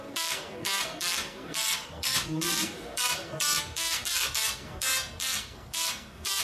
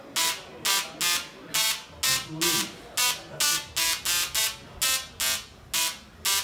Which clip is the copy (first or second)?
first